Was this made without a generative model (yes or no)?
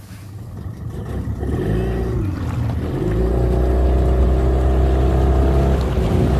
yes